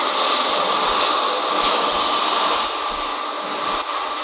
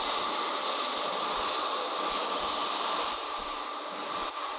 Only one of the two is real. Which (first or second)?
first